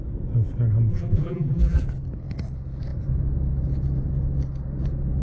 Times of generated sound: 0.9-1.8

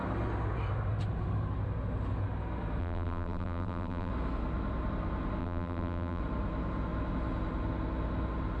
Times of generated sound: 2.8-4.1; 5.4-6.2

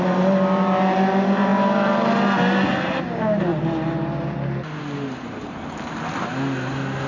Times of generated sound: none

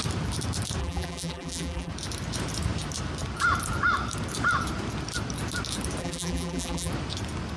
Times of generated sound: 0.8-1.9; 6.0-6.9

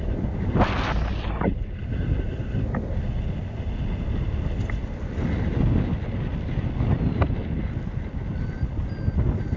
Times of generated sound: none

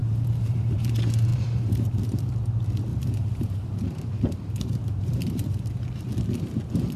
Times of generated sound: 0.0-0.9; 1.3-2.3; 2.9-6.1